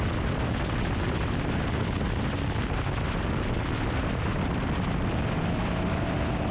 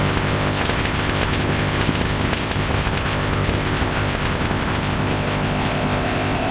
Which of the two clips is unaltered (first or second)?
first